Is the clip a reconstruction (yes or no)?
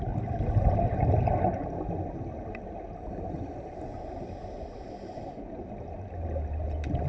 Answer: no